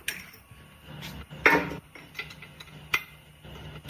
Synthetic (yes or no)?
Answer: no